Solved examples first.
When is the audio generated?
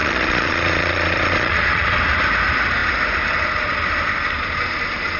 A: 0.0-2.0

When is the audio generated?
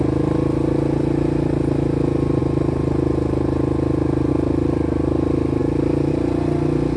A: none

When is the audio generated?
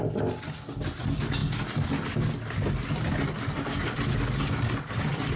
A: none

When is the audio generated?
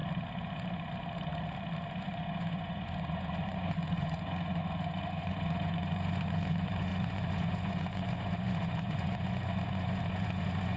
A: 2.0-10.8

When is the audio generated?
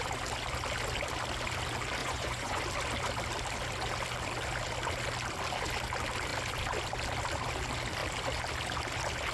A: 2.0-2.6